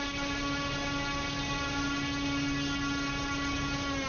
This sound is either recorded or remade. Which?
recorded